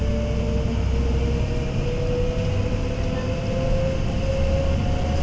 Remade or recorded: recorded